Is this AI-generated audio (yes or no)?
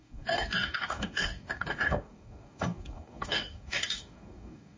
yes